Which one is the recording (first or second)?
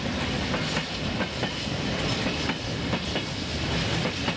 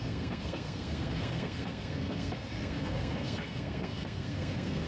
first